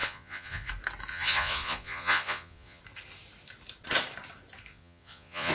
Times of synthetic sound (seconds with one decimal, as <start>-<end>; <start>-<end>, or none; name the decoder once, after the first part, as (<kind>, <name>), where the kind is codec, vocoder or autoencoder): 0.0-0.7 (vocoder, Vocos); 1.1-2.8; 4.7-5.5